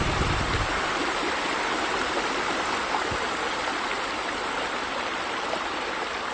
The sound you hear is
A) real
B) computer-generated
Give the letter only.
B